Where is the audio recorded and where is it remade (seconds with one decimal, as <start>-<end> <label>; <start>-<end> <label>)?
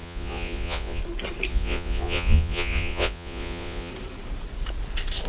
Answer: 0.0-1.0 remade; 1.0-1.5 recorded; 1.5-3.9 remade; 3.9-5.3 recorded